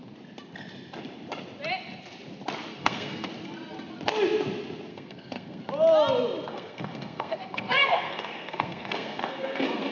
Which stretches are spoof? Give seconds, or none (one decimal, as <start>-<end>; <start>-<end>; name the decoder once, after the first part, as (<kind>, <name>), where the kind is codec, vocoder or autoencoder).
2.7-3.3 (codec, SNAC); 4.9-5.6; 6.5-9.9